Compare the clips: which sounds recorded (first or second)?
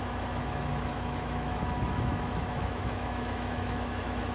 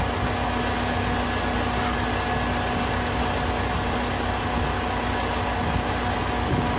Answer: second